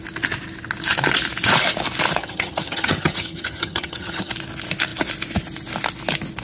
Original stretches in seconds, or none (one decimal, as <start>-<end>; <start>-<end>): 0.0-2.2; 4.3-6.4